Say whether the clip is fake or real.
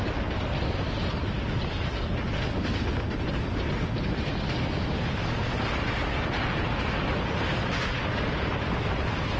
real